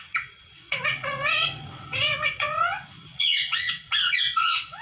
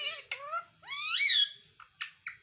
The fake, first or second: first